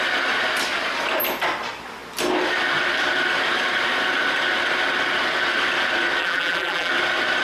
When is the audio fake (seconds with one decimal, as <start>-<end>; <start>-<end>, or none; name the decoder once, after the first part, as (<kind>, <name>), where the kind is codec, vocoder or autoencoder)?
6.2-6.9 (vocoder, BigVGAN v2)